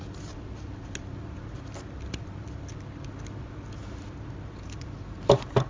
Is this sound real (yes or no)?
yes